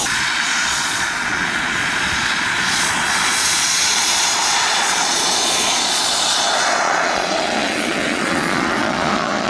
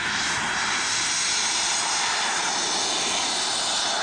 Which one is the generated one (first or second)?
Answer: first